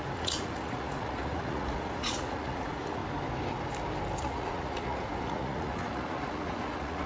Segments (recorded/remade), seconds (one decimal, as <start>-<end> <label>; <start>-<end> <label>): 0.0-3.0 remade; 3.0-4.2 recorded; 4.2-7.1 remade